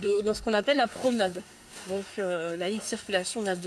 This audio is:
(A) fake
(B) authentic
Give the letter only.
A